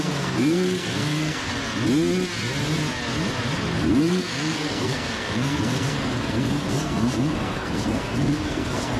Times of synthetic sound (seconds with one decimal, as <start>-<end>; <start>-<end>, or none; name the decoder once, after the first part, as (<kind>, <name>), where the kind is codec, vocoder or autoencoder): 0.0-1.5 (codec, SNAC); 3.9-9.0